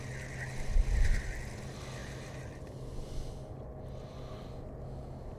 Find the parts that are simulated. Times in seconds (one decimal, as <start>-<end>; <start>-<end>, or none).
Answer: none

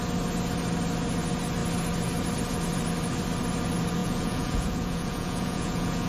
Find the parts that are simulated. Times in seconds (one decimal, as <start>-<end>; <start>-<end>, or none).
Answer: 4.0-6.1

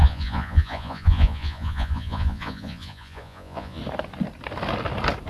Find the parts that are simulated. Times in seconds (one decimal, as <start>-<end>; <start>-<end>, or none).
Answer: 0.0-3.8

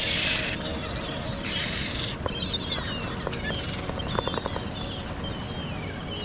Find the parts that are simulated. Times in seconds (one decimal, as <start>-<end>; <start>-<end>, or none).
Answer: 0.7-2.6

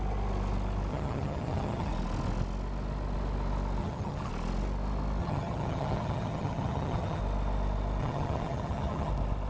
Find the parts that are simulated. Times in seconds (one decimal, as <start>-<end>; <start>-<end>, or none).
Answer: 0.9-1.9; 3.8-4.3; 5.2-7.2; 8.0-9.1

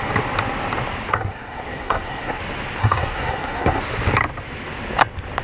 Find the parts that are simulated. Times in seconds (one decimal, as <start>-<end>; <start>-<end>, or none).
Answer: 1.1-2.4; 2.8-3.8